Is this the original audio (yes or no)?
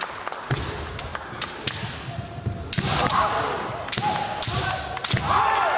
yes